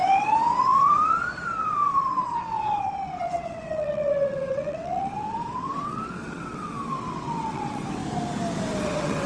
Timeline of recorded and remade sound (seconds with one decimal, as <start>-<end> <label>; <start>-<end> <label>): 0.0-8.0 remade; 8.0-8.8 recorded; 8.8-9.3 remade